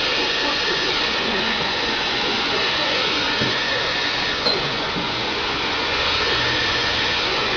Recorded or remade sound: remade